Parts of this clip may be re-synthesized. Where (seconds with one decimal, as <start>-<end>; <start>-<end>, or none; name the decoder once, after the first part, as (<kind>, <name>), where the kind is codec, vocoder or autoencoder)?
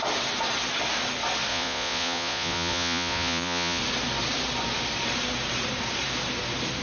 1.5-3.8 (vocoder, Vocos)